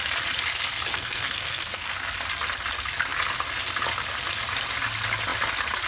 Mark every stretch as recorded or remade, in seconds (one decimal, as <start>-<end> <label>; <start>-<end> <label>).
0.0-0.9 recorded; 0.9-1.9 remade; 1.9-5.9 recorded